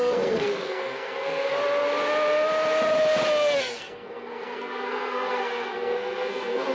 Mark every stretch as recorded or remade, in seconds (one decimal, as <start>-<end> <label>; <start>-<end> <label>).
0.0-1.5 remade; 1.5-3.6 recorded; 3.6-6.7 remade